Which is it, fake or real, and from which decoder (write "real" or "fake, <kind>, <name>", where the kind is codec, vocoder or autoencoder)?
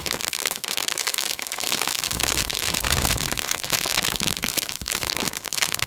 fake, codec, SNAC